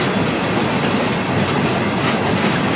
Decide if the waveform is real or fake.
real